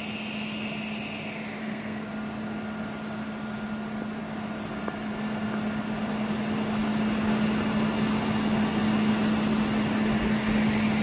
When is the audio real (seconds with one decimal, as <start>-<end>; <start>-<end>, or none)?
0.0-1.6; 2.1-11.0